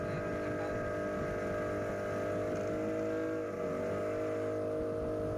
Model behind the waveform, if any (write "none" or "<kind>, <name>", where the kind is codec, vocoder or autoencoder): none